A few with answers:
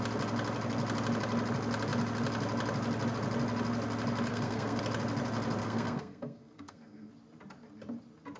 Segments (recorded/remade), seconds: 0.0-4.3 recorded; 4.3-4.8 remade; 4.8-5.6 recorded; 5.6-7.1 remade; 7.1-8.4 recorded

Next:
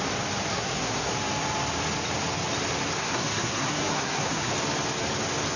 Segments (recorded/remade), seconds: 0.0-0.5 recorded; 0.5-1.1 remade; 1.1-3.0 recorded; 3.0-4.5 remade; 4.5-5.6 recorded

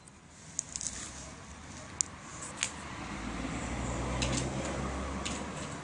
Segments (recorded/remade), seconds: 0.0-5.8 recorded

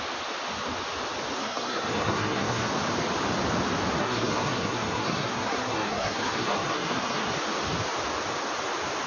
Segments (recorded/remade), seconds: 0.0-1.4 recorded; 1.4-2.7 remade; 2.7-4.0 recorded; 4.0-7.3 remade; 7.3-9.1 recorded

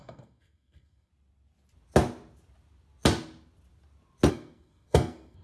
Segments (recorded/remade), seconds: 0.0-1.1 remade; 1.1-4.3 recorded; 4.3-5.4 remade

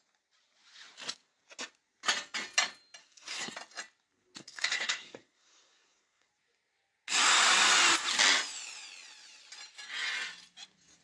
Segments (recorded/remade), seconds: 0.0-3.0 recorded; 3.0-3.5 remade; 3.5-4.4 recorded; 4.4-6.3 remade; 6.3-11.0 recorded